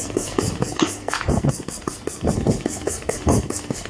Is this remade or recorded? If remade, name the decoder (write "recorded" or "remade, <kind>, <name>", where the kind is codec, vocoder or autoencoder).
remade, codec, SNAC